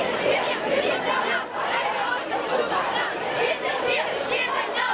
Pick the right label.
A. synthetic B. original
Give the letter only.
A